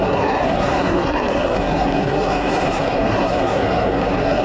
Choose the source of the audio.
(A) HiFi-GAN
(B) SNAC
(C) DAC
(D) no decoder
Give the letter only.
B